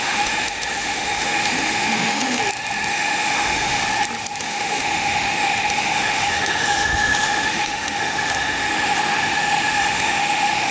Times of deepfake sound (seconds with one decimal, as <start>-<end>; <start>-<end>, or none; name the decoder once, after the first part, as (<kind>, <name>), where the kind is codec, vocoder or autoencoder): 0.0-2.4 (autoencoder, DAC-VAE); 2.9-3.8; 4.4-10.7